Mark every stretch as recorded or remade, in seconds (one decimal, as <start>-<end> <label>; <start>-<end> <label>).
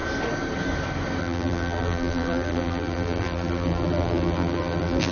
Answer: 0.0-1.2 recorded; 1.2-5.1 remade